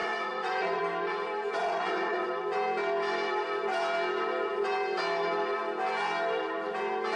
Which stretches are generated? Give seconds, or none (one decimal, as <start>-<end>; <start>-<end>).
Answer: 0.0-0.8; 1.6-2.3